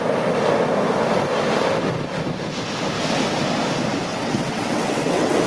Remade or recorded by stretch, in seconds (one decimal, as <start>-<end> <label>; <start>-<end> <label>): 0.0-4.1 recorded; 4.1-5.5 remade

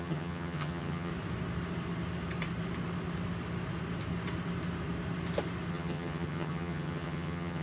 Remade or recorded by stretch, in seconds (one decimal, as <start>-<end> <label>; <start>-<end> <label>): 0.0-1.1 remade; 1.1-5.7 recorded; 5.7-7.6 remade